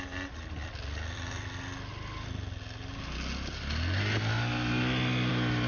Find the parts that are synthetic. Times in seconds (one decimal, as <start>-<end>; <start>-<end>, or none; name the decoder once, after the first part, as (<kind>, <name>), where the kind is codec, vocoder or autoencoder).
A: none